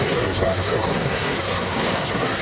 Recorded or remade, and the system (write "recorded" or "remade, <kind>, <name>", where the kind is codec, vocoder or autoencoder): remade, codec, SNAC